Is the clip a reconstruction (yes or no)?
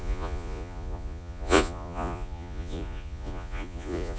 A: yes